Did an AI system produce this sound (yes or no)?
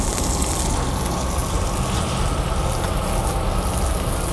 no